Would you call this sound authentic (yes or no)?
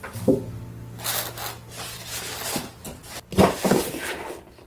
yes